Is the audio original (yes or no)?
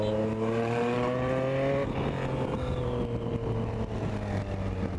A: yes